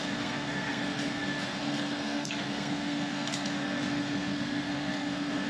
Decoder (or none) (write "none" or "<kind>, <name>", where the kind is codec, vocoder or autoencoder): codec, SNAC